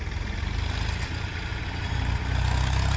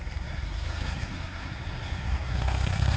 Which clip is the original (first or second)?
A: first